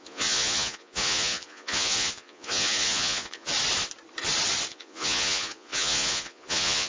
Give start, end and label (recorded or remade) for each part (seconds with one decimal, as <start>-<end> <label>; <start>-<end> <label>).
0.0-3.5 remade; 3.5-4.7 recorded; 4.7-6.9 remade